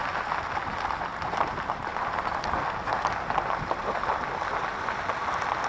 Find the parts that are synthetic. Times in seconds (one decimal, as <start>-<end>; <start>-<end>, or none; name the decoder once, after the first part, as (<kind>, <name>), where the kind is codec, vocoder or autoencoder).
none